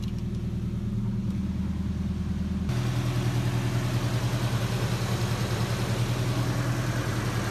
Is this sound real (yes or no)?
yes